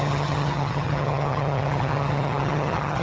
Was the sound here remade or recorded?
remade